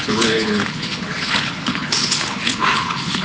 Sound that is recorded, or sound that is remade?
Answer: remade